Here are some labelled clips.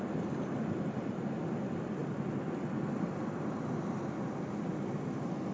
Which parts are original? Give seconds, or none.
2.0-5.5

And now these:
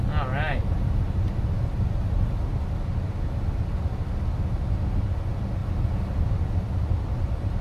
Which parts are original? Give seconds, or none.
0.0-7.6

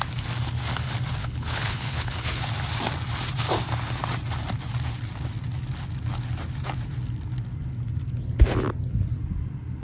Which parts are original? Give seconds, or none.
0.0-1.2; 2.4-9.8

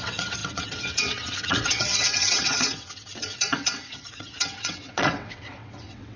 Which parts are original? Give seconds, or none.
none